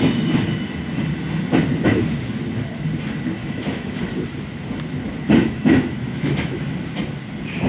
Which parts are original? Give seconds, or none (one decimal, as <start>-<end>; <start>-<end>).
0.0-3.4; 4.0-5.4; 6.7-7.7